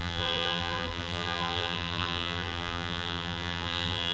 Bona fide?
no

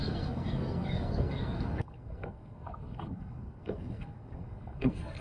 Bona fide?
no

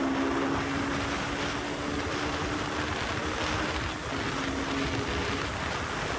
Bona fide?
yes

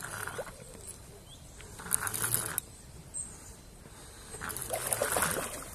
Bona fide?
yes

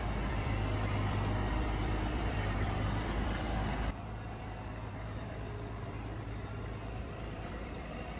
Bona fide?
no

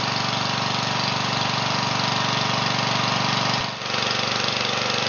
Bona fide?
yes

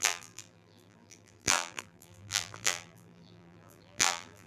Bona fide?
no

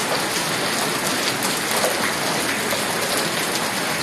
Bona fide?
yes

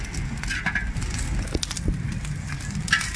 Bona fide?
yes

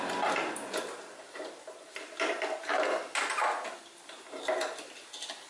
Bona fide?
yes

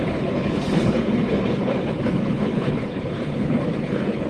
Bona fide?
no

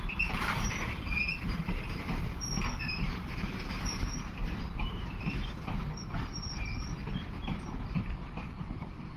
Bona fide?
no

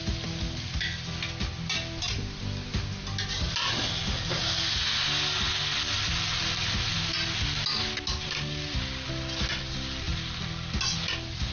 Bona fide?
yes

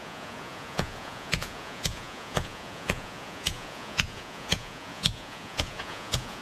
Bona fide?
no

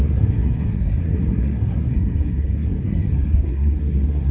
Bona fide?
no